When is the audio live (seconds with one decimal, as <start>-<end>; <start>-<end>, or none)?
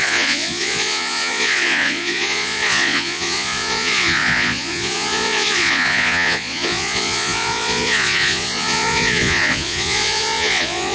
none